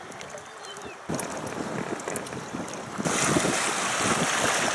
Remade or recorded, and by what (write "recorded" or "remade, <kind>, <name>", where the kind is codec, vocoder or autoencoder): recorded